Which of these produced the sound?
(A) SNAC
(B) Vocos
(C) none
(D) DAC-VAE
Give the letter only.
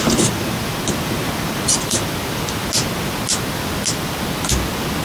C